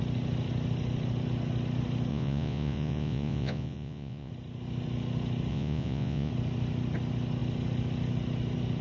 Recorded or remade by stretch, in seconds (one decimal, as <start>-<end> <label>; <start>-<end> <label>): 0.0-2.1 recorded; 2.1-4.3 remade; 4.3-5.5 recorded; 5.5-6.3 remade; 6.3-8.8 recorded